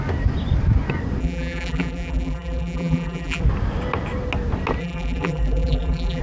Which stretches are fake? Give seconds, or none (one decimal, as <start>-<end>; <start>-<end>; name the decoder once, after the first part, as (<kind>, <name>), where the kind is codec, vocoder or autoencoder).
1.2-3.4 (vocoder, BigVGAN v2); 4.8-6.2